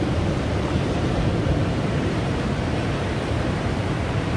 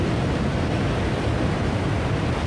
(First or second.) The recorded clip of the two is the second